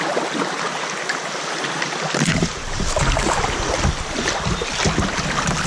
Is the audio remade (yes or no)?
no